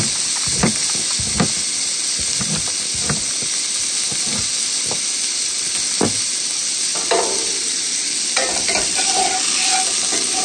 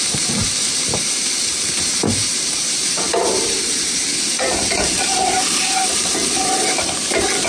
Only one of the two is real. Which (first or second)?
first